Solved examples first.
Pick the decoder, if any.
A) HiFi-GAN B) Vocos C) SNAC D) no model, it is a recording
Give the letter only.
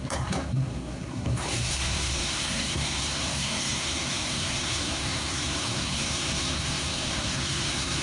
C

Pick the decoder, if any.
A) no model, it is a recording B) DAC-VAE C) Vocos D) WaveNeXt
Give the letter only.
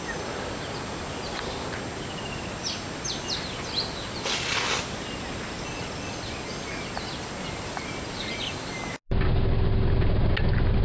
A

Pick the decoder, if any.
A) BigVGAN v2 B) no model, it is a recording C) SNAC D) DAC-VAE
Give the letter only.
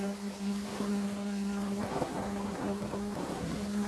C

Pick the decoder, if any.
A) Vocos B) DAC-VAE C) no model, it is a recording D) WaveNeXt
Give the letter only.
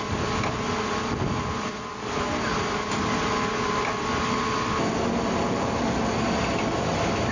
C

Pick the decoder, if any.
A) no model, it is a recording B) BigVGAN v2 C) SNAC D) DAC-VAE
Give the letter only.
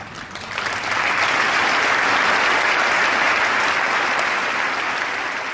A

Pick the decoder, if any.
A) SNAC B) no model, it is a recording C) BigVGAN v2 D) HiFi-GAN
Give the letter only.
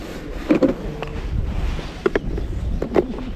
B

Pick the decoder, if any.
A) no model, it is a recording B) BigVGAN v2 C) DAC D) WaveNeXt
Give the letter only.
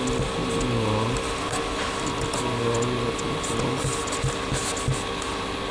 A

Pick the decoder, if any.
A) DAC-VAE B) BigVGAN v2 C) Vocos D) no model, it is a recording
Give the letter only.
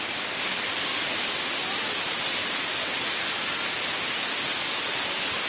D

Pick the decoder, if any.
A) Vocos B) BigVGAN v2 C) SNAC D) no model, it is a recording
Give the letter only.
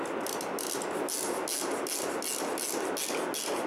D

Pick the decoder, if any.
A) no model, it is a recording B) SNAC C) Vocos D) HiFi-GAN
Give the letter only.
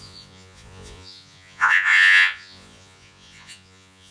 C